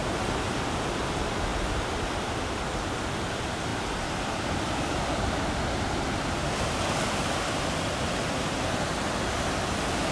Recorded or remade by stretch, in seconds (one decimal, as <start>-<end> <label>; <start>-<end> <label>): 0.0-10.1 recorded